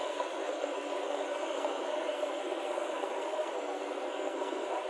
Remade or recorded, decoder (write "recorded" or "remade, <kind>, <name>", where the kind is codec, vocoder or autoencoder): remade, codec, SNAC